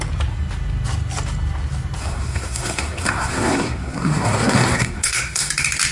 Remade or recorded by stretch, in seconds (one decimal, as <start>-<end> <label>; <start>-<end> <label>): 0.0-2.0 recorded; 2.0-5.5 remade; 5.5-5.9 recorded